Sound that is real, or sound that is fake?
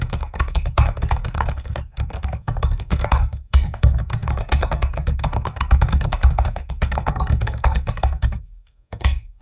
fake